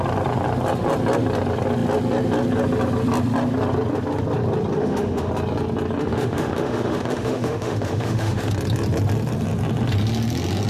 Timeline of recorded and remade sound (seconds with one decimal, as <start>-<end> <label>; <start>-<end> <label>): 0.0-4.8 recorded; 4.8-5.3 remade; 5.3-6.0 recorded; 6.0-8.5 remade; 8.5-10.7 recorded